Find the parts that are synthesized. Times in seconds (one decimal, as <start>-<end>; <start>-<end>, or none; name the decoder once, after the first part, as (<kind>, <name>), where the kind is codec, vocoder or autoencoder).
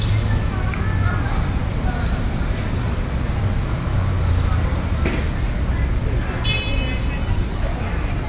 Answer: none